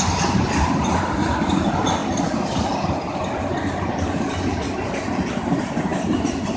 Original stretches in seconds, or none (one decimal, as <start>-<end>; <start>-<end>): 0.0-6.6